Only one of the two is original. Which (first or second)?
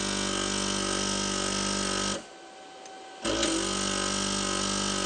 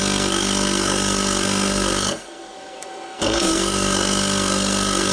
first